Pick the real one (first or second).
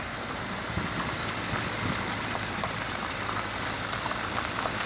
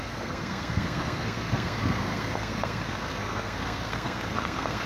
first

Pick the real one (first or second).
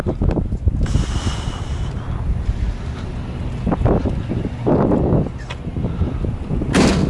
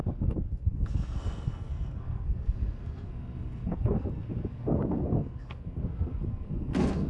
first